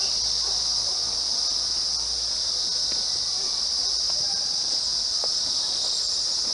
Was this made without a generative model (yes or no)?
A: yes